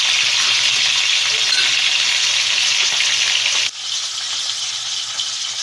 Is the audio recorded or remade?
recorded